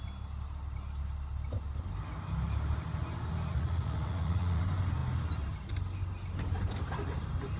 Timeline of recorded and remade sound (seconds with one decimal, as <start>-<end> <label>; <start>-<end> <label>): 0.0-3.5 recorded; 3.5-4.6 remade; 4.6-7.6 recorded